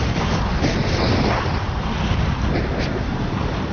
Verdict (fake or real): real